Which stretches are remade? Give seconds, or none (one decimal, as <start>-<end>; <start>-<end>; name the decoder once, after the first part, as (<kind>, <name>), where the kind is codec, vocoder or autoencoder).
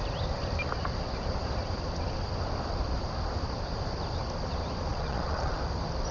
4.9-5.6 (vocoder, Vocos)